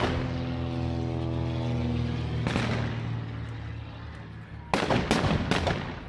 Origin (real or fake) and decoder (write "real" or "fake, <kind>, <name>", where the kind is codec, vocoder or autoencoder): real